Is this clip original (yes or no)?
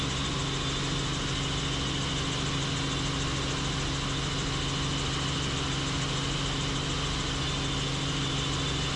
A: yes